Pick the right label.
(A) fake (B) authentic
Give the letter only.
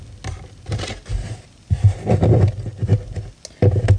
B